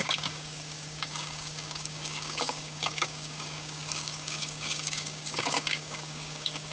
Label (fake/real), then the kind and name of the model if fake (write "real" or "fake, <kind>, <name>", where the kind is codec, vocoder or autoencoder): fake, codec, DAC